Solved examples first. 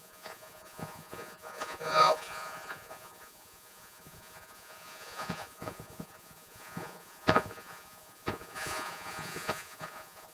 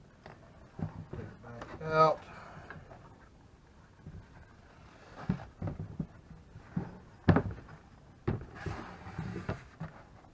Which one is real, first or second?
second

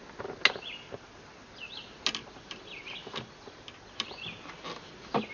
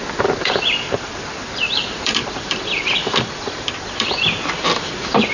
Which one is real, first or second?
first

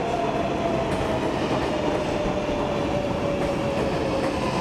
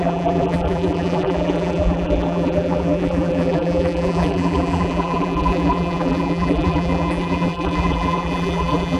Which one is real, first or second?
first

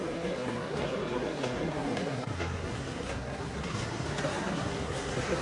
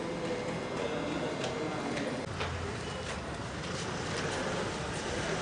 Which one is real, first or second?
second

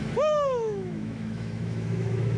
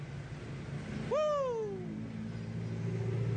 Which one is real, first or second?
second